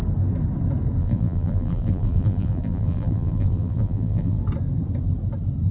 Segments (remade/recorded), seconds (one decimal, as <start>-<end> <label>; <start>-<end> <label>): 0.0-1.0 recorded; 1.0-4.4 remade; 4.4-5.7 recorded